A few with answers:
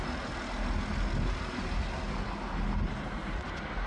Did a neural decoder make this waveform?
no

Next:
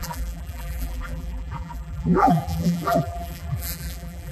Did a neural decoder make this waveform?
yes